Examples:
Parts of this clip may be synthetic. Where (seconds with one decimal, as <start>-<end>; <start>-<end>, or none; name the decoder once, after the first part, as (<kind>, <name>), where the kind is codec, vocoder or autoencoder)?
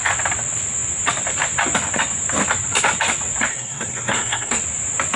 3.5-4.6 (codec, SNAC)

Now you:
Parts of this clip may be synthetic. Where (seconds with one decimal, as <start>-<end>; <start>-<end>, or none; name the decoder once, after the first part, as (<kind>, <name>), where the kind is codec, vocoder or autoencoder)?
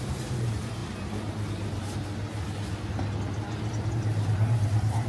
0.0-0.8 (vocoder, BigVGAN v2); 3.9-5.1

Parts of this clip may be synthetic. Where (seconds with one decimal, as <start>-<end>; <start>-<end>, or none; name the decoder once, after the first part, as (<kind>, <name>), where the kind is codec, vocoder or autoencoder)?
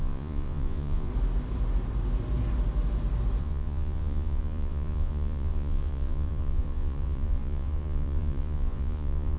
0.0-1.1 (vocoder, Vocos); 3.4-9.4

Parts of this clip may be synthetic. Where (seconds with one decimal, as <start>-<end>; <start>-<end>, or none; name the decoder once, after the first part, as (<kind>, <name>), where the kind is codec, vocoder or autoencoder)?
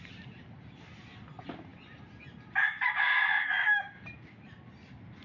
none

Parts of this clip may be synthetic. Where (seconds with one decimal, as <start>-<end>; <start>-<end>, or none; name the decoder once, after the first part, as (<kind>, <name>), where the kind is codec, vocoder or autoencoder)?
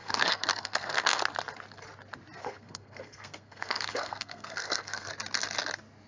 0.0-1.2 (codec, SNAC); 2.4-5.1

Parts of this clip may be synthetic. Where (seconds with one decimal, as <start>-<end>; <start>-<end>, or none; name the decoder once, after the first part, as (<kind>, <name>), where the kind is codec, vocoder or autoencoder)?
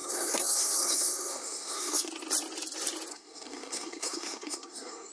0.0-2.1 (codec, SNAC); 3.1-5.1